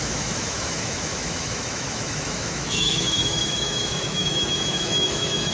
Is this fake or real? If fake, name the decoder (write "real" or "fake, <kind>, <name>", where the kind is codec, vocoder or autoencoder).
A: fake, autoencoder, DAC-VAE